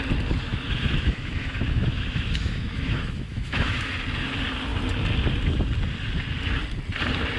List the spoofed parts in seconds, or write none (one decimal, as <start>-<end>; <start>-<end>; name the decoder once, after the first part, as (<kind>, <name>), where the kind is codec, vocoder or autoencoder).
0.5-3.9 (autoencoder, DAC-VAE)